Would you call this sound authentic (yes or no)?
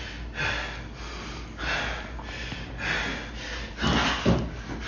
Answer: yes